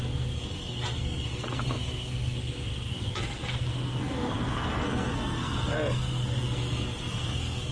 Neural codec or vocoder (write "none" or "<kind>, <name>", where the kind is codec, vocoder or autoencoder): codec, SNAC